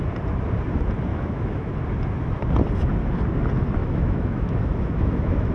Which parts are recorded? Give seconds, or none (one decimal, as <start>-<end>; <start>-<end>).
0.0-1.1; 1.7-3.8